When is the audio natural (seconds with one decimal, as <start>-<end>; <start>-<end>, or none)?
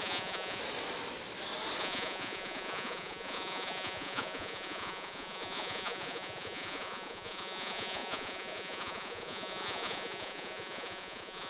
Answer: 0.6-1.8